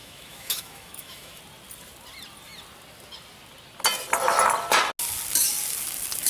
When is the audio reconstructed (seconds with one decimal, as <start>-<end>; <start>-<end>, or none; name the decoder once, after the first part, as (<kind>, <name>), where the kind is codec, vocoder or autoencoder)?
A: 0.0-1.4 (autoencoder, DAC-VAE)